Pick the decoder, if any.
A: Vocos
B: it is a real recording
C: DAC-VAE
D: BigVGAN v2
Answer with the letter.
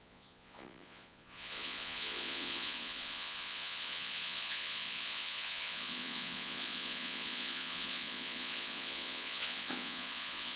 A